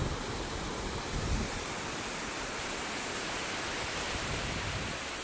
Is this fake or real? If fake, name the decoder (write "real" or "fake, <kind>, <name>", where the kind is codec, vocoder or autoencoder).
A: real